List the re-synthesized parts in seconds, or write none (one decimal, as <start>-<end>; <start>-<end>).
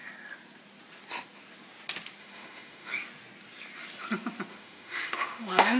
2.2-2.9; 4.5-5.8